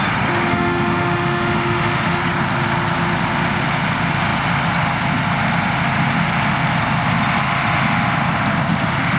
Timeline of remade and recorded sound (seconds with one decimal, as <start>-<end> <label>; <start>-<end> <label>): 0.0-0.5 recorded; 0.5-2.2 remade; 2.2-9.2 recorded